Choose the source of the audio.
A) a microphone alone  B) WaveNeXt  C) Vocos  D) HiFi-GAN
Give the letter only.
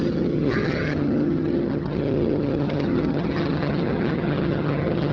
D